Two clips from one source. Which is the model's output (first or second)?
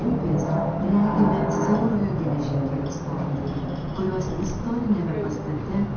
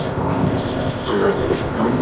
second